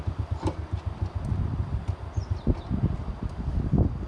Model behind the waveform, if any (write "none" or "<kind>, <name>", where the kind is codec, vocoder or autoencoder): none